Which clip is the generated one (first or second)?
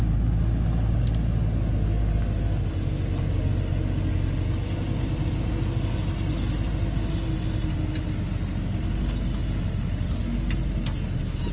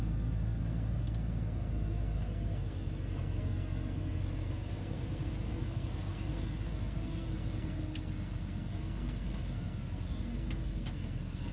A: second